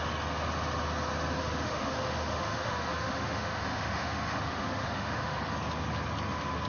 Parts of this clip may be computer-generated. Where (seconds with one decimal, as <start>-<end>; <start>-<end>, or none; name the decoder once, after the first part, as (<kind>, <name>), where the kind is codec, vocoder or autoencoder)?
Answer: 1.4-5.4 (autoencoder, DAC-VAE)